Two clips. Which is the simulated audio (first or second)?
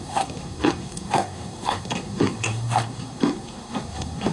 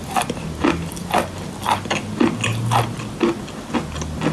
first